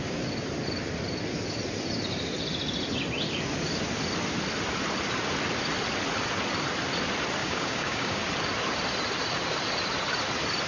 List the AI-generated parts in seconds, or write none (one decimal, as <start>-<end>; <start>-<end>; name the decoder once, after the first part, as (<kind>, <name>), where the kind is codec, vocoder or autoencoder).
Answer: 7.4-8.2 (codec, DAC)

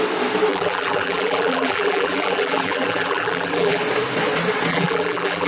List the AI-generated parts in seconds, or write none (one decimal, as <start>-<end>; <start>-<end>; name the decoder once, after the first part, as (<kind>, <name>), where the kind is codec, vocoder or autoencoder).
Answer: 0.5-3.8 (vocoder, BigVGAN v2); 4.7-5.5

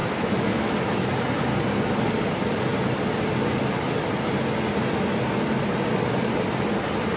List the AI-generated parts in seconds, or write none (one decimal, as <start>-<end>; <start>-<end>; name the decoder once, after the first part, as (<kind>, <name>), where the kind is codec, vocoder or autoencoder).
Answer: 0.0-1.1 (autoencoder, DAC-VAE)

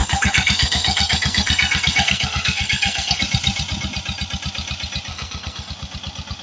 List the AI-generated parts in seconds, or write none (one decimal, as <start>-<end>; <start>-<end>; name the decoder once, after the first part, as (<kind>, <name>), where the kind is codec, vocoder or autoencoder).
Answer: 0.0-3.2 (codec, SNAC); 5.1-5.7

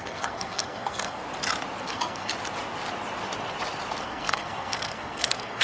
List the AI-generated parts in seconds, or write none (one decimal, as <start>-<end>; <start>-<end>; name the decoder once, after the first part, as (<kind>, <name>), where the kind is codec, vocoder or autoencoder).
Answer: 0.0-1.2 (codec, SNAC); 1.8-2.3; 4.0-5.6

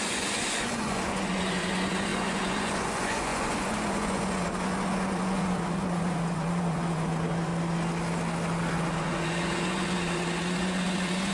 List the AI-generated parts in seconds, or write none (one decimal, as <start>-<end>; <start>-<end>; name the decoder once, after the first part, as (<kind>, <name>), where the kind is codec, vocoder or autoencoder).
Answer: 0.0-7.5 (vocoder, Vocos); 8.7-11.3

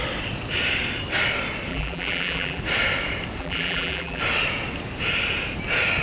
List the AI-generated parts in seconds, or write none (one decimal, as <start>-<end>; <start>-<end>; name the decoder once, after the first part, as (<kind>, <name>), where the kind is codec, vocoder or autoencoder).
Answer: 1.7-2.6 (vocoder, BigVGAN v2); 3.4-4.2

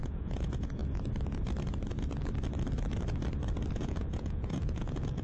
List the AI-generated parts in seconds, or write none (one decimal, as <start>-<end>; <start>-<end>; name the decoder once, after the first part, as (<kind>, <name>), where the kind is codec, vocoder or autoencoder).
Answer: 0.0-0.8 (vocoder, Vocos); 3.7-5.2